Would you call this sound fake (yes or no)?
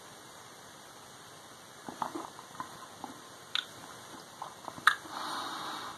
no